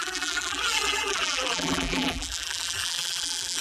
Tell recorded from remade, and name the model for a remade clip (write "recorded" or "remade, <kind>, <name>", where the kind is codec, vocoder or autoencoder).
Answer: remade, vocoder, BigVGAN v2